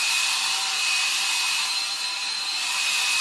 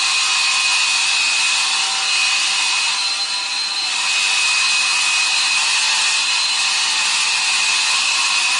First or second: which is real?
second